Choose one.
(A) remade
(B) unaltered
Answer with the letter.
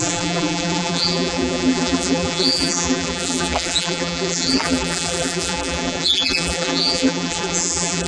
A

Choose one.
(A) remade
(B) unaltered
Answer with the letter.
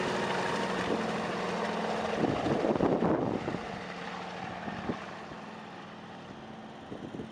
B